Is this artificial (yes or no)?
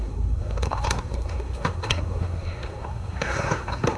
yes